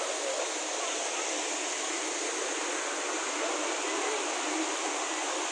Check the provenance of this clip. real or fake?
real